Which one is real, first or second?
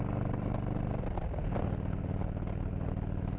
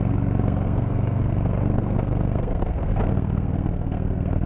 first